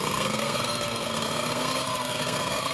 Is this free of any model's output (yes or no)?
no